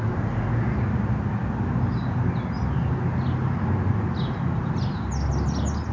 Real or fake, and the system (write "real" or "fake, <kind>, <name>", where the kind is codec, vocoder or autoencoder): real